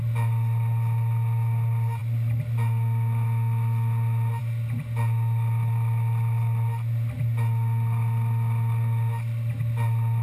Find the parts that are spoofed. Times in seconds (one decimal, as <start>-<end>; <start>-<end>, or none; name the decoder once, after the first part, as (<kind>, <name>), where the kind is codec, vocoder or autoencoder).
none